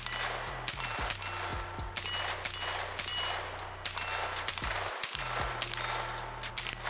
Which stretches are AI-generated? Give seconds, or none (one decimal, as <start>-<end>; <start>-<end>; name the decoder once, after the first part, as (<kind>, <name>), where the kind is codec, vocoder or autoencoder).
none